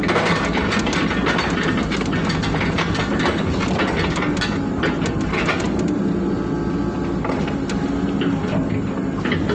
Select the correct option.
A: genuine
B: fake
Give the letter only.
A